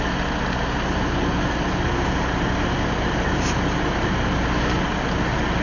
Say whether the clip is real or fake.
real